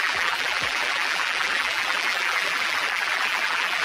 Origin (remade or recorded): remade